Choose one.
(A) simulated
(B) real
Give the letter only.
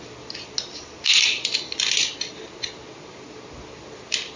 B